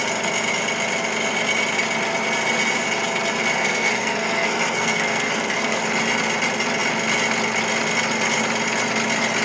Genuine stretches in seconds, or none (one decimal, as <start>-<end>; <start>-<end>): 0.0-3.6; 5.8-9.4